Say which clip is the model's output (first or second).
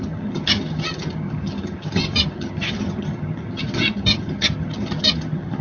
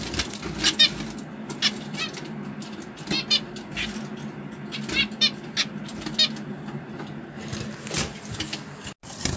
first